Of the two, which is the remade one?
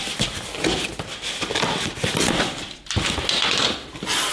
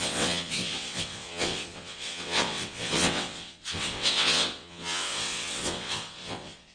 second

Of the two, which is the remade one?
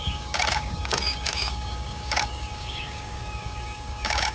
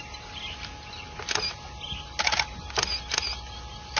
first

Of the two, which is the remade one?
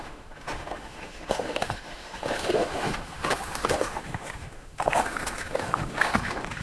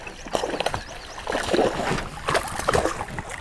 first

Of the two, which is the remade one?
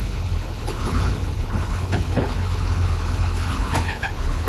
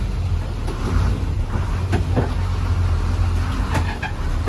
first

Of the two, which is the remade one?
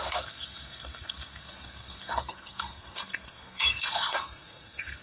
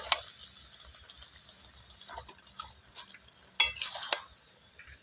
first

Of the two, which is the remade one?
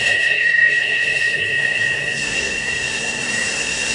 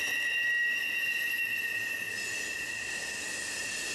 first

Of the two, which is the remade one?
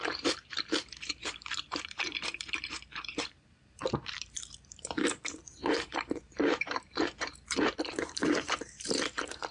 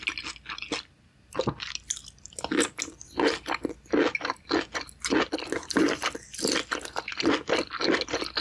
first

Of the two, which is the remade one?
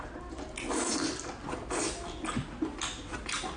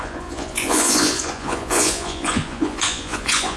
second